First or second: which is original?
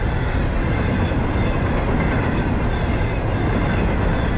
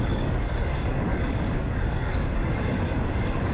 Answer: first